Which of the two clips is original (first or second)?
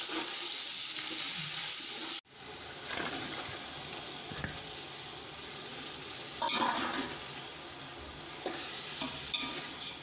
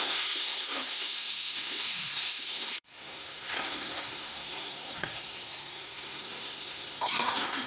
first